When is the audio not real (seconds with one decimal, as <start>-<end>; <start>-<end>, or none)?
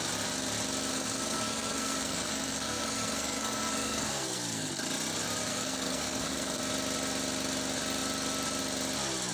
0.9-4.7; 5.5-6.6